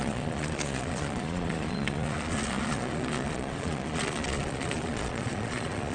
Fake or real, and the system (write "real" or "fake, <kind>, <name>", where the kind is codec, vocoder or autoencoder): fake, vocoder, Vocos